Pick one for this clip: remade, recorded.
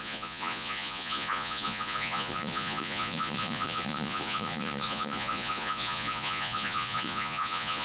remade